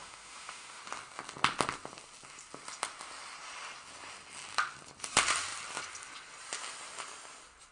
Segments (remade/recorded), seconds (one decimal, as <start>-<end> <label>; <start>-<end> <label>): 0.0-0.8 remade; 0.8-7.7 recorded